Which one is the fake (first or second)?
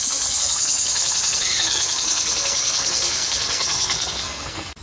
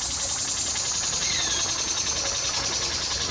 first